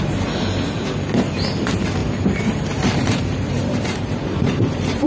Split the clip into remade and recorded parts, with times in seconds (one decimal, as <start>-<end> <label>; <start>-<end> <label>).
0.0-2.0 recorded; 2.0-5.1 remade